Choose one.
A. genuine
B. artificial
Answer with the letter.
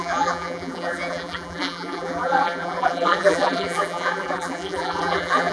B